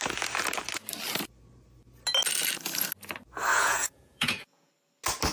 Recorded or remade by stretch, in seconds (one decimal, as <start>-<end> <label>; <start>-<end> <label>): 0.0-3.5 recorded; 3.5-4.7 remade; 4.7-5.3 recorded